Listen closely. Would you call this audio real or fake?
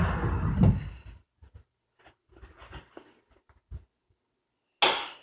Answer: real